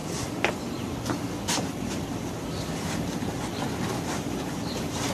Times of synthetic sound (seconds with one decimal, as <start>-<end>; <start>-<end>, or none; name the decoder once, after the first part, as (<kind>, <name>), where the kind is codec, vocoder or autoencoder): none